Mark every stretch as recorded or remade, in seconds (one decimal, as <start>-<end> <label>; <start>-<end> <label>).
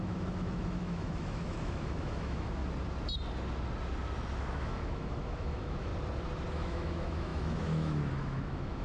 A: 0.0-2.6 remade; 2.6-4.4 recorded; 4.4-5.9 remade; 5.9-6.5 recorded; 6.5-8.8 remade